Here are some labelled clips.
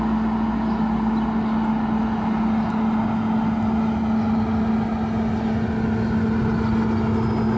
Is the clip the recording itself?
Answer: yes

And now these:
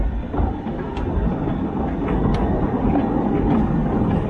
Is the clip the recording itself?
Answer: yes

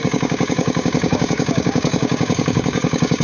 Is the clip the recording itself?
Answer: no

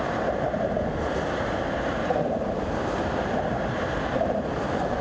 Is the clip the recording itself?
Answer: yes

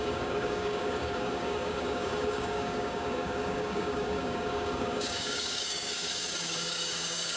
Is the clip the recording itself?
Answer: no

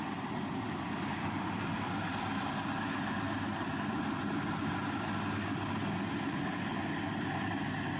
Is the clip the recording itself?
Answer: yes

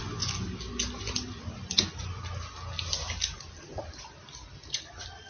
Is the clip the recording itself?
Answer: yes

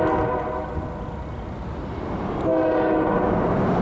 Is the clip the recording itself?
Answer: yes